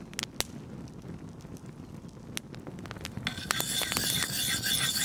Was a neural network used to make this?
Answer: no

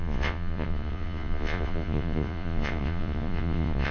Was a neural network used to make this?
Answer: yes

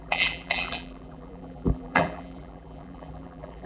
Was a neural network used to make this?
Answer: yes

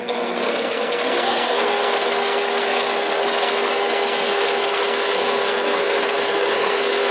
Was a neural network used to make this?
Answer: yes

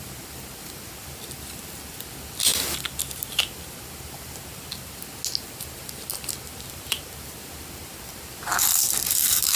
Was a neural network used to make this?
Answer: no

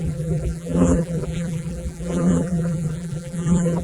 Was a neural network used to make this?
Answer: yes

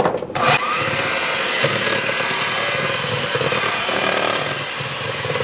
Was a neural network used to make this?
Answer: no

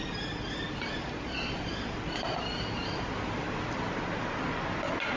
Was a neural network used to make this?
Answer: no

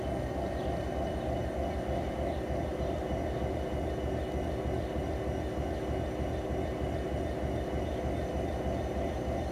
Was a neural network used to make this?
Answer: no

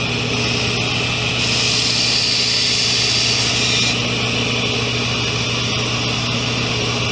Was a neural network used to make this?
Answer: no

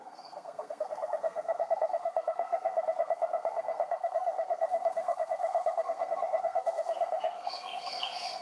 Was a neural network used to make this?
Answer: yes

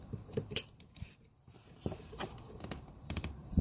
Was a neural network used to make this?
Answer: yes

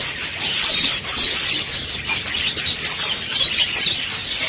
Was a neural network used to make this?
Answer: no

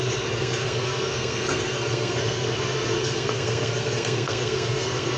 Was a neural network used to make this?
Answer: yes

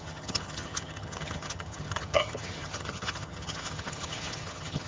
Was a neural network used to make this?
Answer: yes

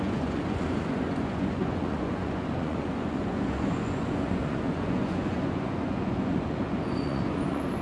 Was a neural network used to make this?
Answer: yes